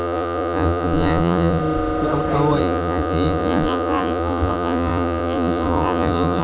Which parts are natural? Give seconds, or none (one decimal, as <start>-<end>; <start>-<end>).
1.6-2.6